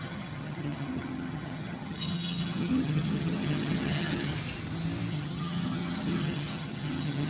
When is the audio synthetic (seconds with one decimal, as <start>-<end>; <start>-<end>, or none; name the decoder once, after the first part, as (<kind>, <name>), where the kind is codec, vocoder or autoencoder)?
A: 0.0-4.3 (vocoder, HiFi-GAN); 5.1-7.3